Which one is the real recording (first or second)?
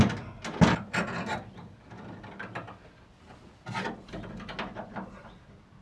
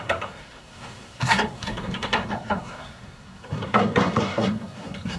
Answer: first